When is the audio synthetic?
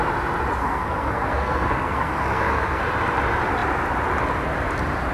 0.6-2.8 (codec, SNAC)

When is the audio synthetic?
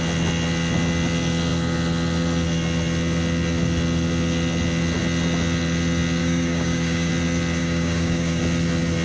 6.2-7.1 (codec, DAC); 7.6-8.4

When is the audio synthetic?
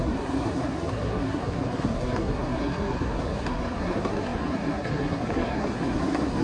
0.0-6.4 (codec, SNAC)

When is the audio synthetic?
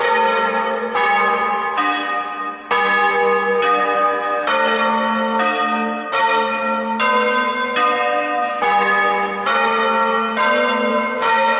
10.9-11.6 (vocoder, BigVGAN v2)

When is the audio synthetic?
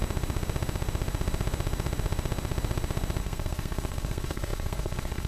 3.2-5.3 (codec, SNAC)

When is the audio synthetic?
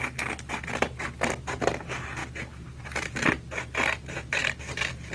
none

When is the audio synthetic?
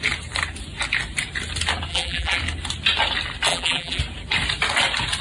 1.9-2.4 (vocoder, BigVGAN v2); 3.5-4.0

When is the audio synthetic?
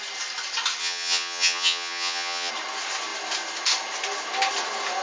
0.8-2.5 (vocoder, HiFi-GAN)